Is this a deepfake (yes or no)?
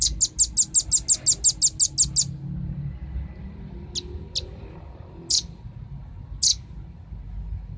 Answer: no